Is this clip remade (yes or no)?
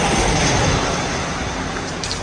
no